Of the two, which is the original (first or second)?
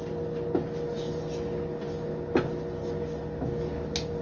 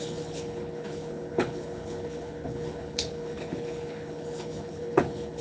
first